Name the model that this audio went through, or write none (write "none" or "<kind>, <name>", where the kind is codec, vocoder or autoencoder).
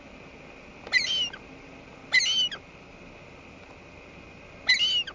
none